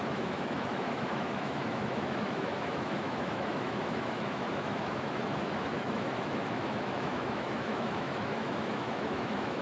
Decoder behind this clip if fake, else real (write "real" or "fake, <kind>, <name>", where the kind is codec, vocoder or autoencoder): fake, autoencoder, DAC-VAE